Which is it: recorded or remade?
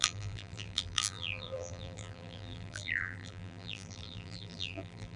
remade